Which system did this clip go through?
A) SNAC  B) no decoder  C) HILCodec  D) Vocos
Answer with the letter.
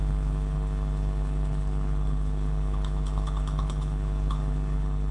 C